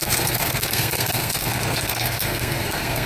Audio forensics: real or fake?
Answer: fake